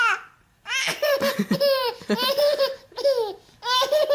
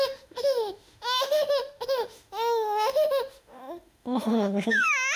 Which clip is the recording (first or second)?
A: first